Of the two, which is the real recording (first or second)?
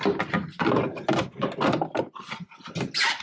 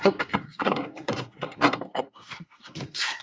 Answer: first